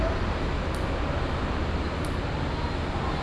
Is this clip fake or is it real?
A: real